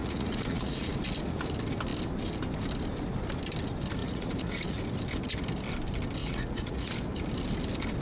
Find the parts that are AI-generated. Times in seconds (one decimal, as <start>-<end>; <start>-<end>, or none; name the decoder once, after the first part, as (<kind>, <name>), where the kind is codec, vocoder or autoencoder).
0.0-0.9 (vocoder, Vocos); 4.0-4.8; 6.2-6.9